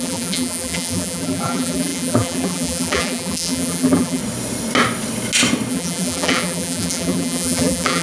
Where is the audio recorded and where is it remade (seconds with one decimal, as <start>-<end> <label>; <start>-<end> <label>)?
0.0-4.2 remade; 4.2-5.7 recorded; 5.7-8.0 remade